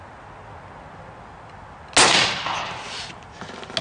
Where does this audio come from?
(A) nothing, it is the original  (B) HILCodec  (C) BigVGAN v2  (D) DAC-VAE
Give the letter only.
A